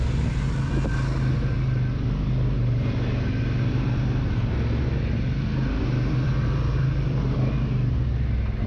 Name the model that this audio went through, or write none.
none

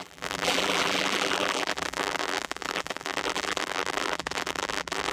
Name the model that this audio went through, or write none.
vocoder, BigVGAN v2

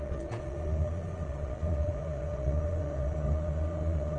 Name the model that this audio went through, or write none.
vocoder, Vocos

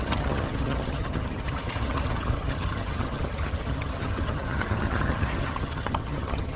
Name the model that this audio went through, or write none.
vocoder, HiFi-GAN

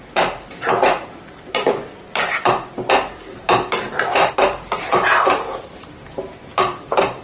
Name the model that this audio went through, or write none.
vocoder, BigVGAN v2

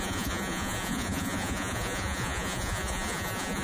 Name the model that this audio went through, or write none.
vocoder, Vocos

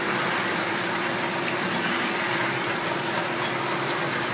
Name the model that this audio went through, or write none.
none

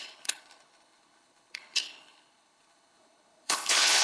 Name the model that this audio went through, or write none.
codec, HILCodec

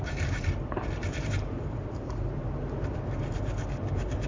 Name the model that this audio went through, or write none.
vocoder, BigVGAN v2